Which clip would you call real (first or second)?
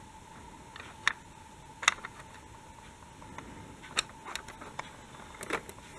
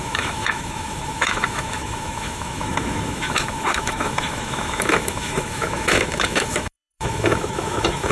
first